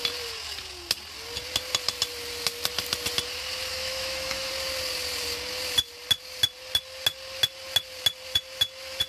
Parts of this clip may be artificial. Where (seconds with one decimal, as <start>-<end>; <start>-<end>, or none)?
3.7-4.5

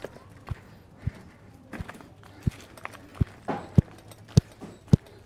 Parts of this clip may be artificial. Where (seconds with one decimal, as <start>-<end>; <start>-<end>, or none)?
none

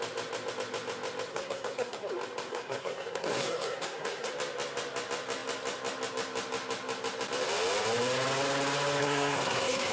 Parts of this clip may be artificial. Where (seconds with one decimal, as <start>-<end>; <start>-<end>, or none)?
1.3-2.1; 2.5-4.3; 9.0-9.9

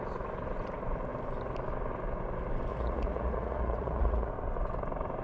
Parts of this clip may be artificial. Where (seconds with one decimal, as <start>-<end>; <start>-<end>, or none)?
2.7-4.3

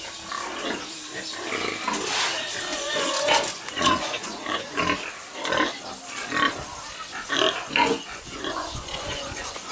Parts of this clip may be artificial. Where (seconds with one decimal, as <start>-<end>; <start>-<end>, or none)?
2.7-4.8; 7.6-9.7

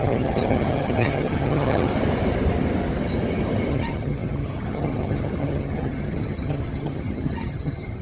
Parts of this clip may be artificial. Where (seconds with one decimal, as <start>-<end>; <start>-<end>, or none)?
0.0-1.9; 3.7-8.0

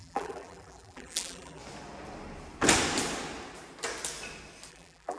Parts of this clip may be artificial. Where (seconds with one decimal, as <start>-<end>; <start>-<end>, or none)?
0.0-1.6; 4.7-5.2

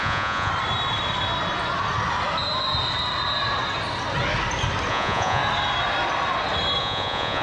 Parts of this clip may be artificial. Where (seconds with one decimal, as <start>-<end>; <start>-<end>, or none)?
0.0-0.5; 4.9-5.4; 6.8-7.4